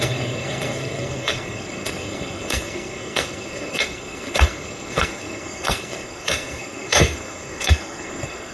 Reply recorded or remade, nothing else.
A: remade